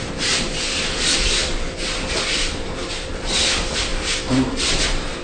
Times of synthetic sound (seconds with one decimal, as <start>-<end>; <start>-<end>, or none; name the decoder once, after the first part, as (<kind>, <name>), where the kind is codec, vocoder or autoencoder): 0.0-3.9 (vocoder, BigVGAN v2); 4.7-5.2